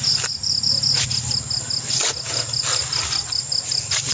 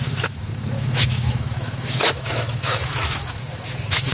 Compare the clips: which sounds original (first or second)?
first